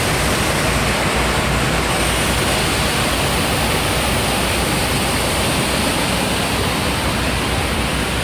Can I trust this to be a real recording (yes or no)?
yes